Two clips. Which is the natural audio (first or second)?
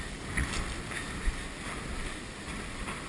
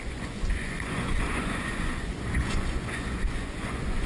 first